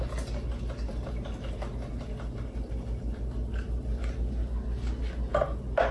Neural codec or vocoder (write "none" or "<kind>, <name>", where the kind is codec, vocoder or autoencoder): none